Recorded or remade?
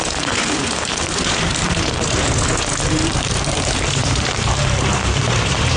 remade